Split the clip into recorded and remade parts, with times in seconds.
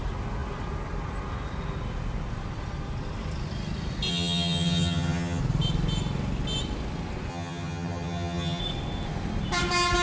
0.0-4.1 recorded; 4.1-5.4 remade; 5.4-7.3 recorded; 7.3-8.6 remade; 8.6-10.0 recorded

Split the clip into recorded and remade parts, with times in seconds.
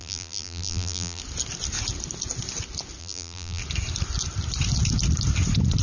0.0-1.2 remade; 1.2-3.0 recorded; 3.0-3.6 remade; 3.6-5.8 recorded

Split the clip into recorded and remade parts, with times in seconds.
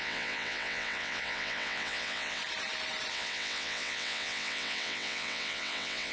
0.0-2.4 remade; 2.4-3.1 recorded; 3.1-6.1 remade